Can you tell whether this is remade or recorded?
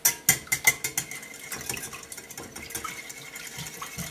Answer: recorded